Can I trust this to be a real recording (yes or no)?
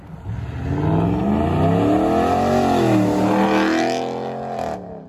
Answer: yes